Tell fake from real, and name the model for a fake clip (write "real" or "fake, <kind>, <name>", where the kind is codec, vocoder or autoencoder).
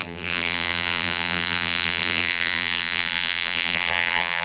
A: fake, vocoder, BigVGAN v2